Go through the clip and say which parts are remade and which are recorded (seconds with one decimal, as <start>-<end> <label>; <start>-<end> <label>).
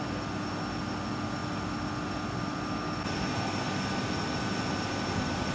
0.0-5.5 recorded